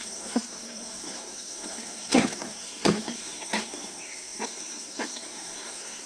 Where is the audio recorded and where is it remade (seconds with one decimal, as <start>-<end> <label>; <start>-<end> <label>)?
0.0-6.1 remade